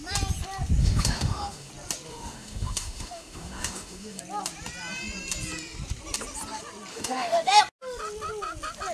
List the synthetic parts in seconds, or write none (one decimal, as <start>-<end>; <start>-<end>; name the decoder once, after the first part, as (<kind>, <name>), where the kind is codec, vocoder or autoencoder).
0.8-1.7 (autoencoder, DAC-VAE); 2.1-4.2; 6.9-7.6